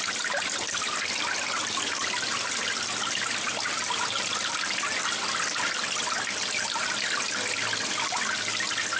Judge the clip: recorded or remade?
recorded